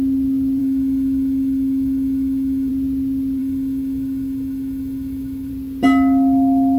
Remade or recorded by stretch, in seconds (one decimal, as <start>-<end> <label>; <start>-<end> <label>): 0.0-0.6 recorded; 0.6-2.7 remade; 2.7-3.4 recorded; 3.4-5.5 remade; 5.5-6.8 recorded